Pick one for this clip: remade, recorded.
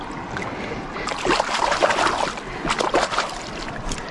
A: recorded